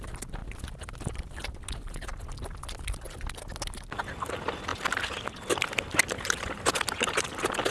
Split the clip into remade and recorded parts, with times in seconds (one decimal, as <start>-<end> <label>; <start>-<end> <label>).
0.0-7.7 recorded